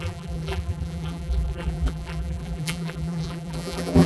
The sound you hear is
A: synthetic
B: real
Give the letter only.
A